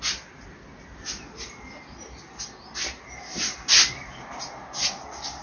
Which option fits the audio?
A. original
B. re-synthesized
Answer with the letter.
A